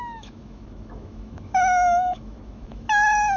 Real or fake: fake